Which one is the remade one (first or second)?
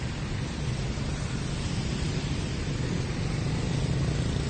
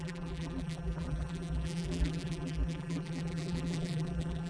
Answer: second